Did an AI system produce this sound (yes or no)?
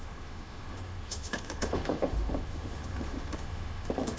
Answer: yes